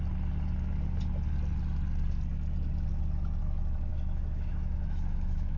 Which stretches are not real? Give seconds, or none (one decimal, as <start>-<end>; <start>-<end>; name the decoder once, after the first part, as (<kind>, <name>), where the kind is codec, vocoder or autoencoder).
3.4-5.6 (autoencoder, DAC-VAE)

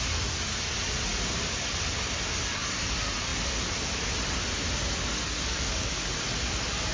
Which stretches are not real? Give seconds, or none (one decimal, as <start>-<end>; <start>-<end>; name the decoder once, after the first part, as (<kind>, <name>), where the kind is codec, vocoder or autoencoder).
5.1-6.0 (codec, DAC)